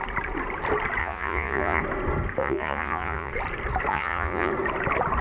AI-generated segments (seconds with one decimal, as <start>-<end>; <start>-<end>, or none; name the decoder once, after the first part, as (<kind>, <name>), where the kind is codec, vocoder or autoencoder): 1.0-1.8 (vocoder, Vocos); 2.4-3.3; 3.9-4.5